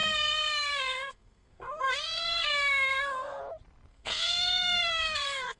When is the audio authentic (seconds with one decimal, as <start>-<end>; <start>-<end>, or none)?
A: 3.4-3.9